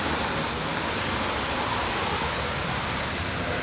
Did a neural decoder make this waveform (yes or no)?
yes